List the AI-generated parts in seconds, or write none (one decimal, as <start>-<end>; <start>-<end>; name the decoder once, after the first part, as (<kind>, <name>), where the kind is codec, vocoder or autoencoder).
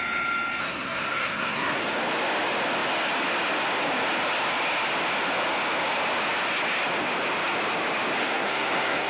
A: 0.6-1.8 (codec, SNAC); 8.2-9.1